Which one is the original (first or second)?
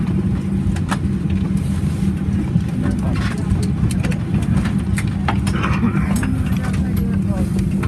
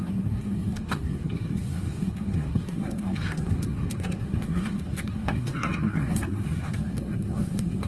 first